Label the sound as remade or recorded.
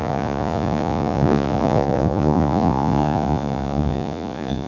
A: remade